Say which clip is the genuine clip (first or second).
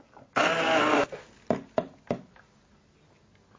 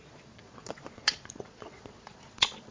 first